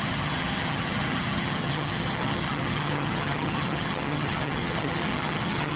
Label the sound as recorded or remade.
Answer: remade